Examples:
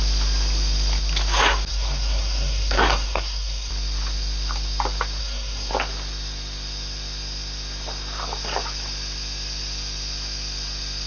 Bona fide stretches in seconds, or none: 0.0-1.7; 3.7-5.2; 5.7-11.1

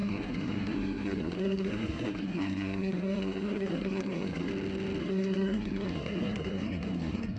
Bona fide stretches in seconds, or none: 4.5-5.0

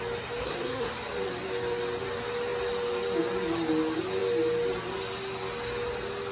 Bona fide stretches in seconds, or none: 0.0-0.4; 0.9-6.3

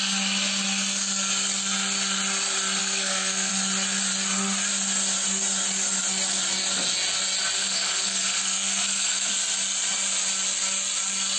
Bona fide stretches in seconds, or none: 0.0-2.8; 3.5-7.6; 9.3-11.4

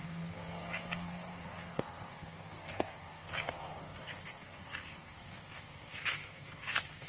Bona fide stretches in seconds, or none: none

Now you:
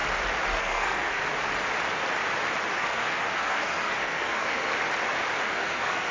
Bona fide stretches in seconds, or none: 0.0-0.6; 1.2-2.7; 4.7-5.5